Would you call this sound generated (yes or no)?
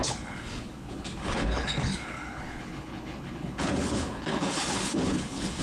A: yes